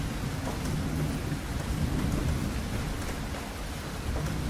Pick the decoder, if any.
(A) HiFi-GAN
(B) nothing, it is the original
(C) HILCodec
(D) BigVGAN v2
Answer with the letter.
B